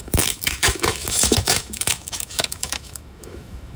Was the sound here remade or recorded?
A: remade